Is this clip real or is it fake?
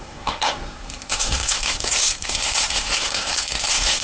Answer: fake